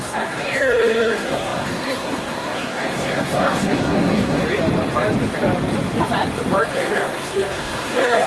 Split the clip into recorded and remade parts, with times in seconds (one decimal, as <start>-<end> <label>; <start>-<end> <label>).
0.0-4.4 remade; 4.4-6.7 recorded; 6.7-8.3 remade

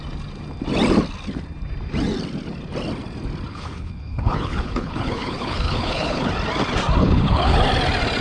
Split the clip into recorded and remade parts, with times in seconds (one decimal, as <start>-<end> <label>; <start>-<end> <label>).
0.0-3.5 recorded; 3.5-6.3 remade; 6.3-7.0 recorded; 7.0-7.6 remade; 7.6-8.2 recorded

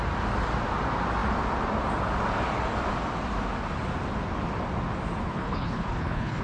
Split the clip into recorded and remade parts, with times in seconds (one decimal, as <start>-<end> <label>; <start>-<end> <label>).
0.0-5.2 recorded; 5.2-6.4 remade